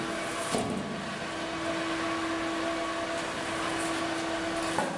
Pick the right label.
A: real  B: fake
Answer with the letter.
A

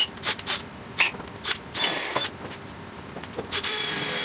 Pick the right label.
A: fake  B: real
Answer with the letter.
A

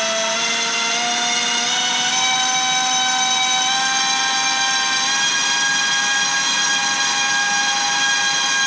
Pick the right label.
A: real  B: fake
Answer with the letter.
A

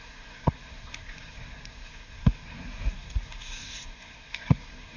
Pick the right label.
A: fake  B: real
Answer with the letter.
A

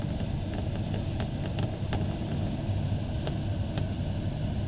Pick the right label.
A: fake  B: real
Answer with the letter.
B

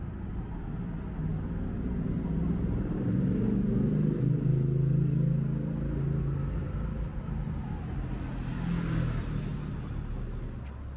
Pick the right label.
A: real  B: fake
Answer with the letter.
A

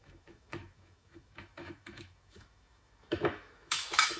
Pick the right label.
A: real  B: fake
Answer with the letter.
B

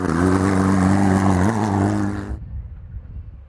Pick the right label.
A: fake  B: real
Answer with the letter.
B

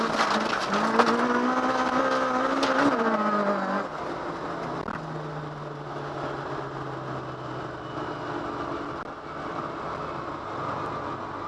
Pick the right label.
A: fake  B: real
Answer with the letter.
B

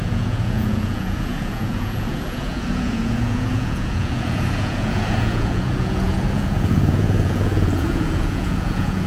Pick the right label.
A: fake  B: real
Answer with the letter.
A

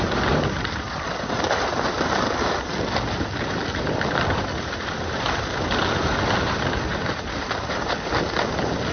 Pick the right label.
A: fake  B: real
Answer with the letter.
B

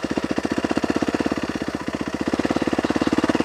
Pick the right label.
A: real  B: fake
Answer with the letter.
B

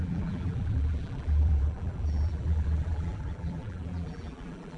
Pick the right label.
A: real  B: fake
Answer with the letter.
B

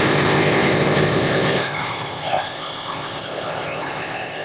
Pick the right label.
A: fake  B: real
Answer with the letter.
A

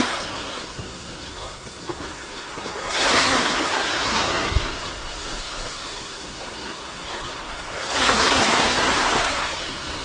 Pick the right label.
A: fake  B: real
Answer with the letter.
A